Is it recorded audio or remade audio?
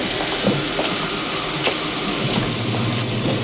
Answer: recorded